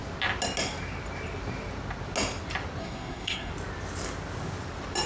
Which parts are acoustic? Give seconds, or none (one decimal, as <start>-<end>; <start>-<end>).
0.0-2.8; 3.5-5.1